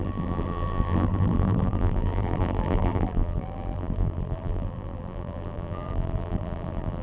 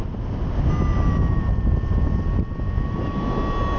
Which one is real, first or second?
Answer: second